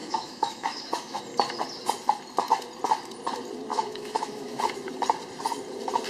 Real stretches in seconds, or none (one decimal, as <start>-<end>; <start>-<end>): 1.2-3.7; 4.6-6.1